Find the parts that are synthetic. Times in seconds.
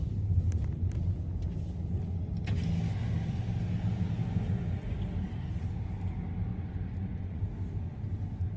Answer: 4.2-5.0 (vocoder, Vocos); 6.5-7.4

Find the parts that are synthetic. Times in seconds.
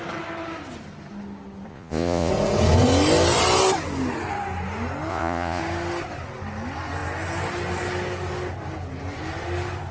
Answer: 1.7-2.3 (vocoder, Vocos); 5.1-5.6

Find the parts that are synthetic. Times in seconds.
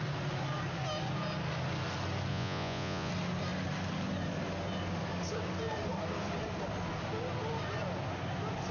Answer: 2.3-3.1 (vocoder, Vocos)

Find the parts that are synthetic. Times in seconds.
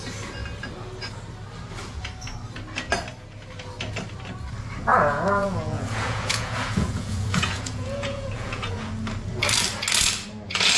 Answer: 4.9-8.9 (vocoder, Vocos)